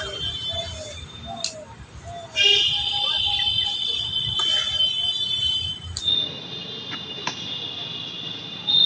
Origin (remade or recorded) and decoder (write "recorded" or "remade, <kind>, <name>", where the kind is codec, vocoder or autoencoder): recorded